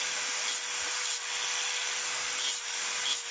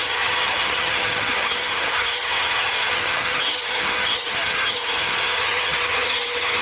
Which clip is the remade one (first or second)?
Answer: second